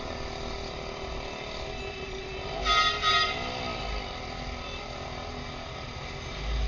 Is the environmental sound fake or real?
real